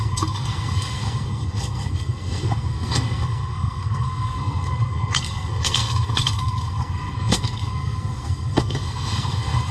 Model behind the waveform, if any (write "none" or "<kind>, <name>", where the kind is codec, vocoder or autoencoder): codec, SNAC